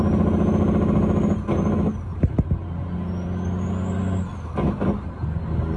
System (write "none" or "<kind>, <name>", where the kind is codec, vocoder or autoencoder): none